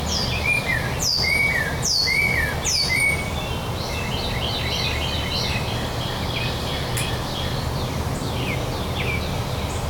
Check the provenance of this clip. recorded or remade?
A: recorded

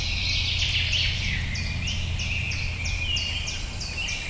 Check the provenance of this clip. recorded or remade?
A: recorded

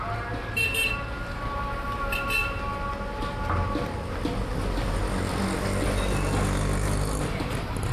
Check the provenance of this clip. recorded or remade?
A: recorded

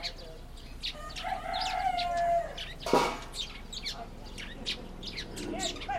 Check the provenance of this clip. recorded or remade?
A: recorded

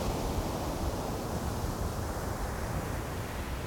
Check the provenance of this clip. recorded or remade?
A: recorded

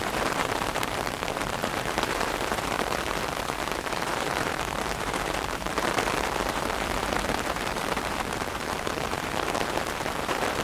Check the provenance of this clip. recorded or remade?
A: remade